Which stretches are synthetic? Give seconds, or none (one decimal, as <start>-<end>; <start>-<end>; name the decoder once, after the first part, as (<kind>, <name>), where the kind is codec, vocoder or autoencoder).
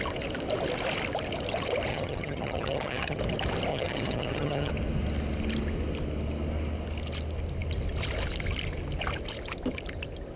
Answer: 1.9-3.2 (vocoder, HiFi-GAN); 3.7-4.7